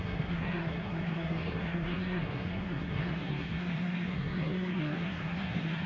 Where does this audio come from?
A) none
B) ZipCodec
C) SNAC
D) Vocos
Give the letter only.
C